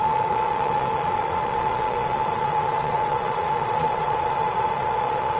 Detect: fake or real fake